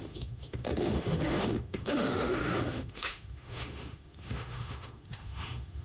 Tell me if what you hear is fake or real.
fake